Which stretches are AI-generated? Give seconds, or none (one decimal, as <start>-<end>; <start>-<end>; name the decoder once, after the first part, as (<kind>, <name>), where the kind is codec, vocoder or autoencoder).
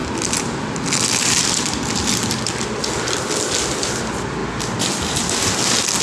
none